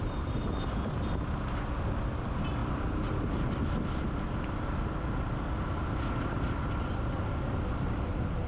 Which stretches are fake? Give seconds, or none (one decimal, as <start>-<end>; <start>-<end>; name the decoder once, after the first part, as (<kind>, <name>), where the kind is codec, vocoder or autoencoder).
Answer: none